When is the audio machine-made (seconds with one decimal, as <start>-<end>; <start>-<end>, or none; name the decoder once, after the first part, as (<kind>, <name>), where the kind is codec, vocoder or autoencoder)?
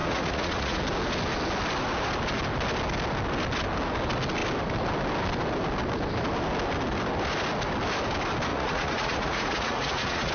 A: 0.0-0.8 (vocoder, Vocos); 8.5-10.3